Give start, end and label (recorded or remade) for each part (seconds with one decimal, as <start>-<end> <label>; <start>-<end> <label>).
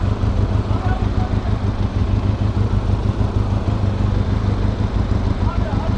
0.0-6.0 recorded